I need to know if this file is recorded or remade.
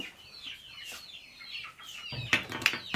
recorded